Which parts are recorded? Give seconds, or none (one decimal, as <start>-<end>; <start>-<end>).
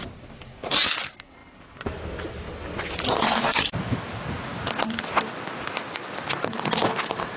0.0-7.4